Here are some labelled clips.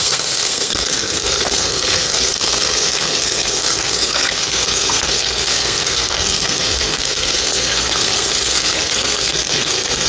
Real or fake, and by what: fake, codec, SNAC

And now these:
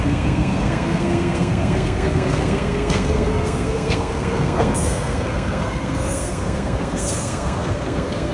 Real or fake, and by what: fake, codec, SNAC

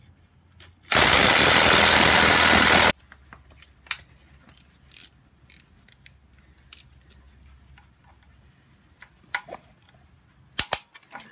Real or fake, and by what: real